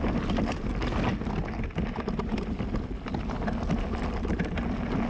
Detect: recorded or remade recorded